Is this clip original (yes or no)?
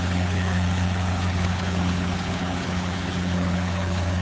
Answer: no